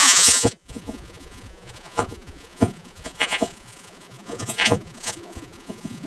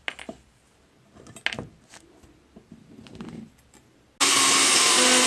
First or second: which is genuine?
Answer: second